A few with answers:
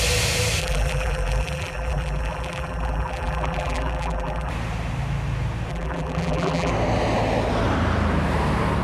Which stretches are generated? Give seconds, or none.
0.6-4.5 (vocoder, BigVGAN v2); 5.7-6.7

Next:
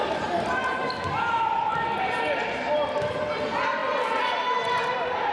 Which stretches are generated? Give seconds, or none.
1.2-3.8 (vocoder, BigVGAN v2)

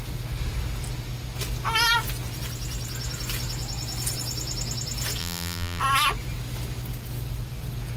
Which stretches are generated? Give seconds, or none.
5.2-5.8 (vocoder, BigVGAN v2)